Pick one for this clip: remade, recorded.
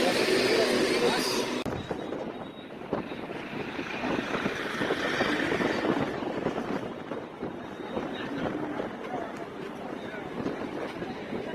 recorded